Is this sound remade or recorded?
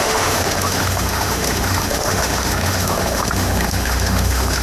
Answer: remade